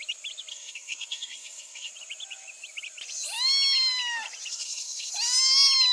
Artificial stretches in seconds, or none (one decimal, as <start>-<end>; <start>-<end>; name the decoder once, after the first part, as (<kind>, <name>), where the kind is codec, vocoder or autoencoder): 0.5-1.9 (codec, SNAC); 4.5-5.1